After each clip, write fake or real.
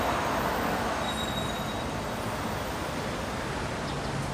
real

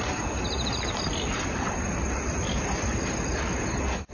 real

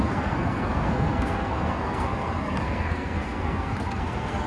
fake